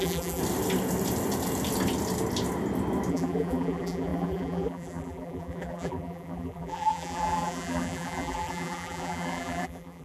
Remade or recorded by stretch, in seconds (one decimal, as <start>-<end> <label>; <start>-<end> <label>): 0.0-0.4 remade; 0.4-3.1 recorded; 3.1-10.0 remade